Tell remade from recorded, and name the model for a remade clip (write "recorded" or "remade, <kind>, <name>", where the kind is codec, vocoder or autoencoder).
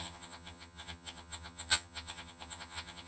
remade, vocoder, HiFi-GAN